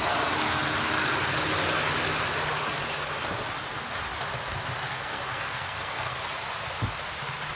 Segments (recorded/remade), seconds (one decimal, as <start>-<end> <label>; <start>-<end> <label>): 0.0-4.9 recorded; 4.9-6.2 remade; 6.2-7.6 recorded

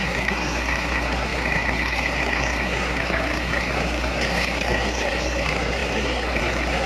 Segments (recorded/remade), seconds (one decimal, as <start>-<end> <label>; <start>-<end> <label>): 0.0-6.9 remade

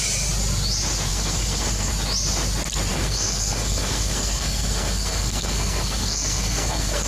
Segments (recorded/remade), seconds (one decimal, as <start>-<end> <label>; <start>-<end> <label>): 0.0-1.1 recorded; 1.1-1.9 remade; 1.9-2.9 recorded; 2.9-7.1 remade

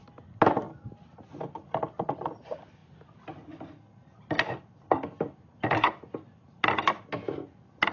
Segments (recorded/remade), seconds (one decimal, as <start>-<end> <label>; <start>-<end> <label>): 0.0-7.9 recorded

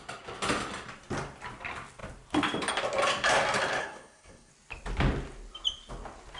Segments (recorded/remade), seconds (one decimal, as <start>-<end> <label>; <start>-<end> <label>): 0.0-3.8 recorded; 3.8-4.5 remade; 4.5-6.4 recorded

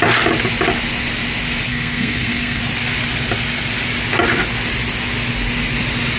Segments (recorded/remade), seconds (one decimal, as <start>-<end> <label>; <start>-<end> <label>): 0.0-1.7 recorded; 1.7-2.6 remade; 2.6-6.2 recorded